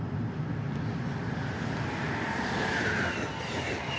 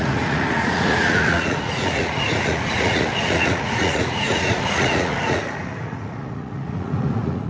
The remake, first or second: second